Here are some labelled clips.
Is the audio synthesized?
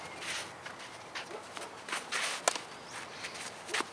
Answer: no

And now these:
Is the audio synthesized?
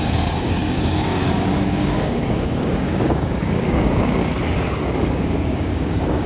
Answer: yes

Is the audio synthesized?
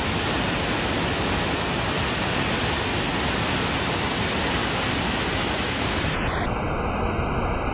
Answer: no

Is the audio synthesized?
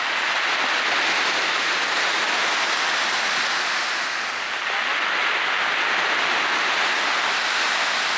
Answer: no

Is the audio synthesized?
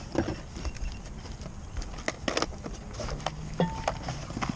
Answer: no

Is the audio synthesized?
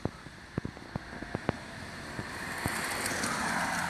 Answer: no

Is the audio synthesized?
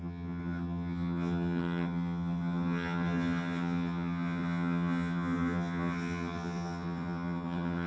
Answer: yes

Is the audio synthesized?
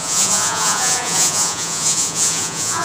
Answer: yes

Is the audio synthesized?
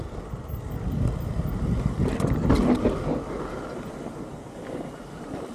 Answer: no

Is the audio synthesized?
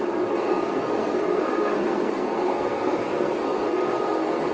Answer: yes